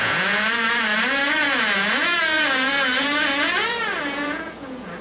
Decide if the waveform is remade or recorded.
remade